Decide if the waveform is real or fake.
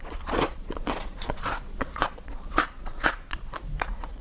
fake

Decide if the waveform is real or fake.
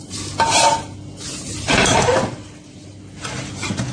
real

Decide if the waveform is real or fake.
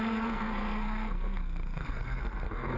fake